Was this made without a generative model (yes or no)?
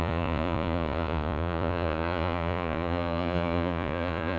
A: no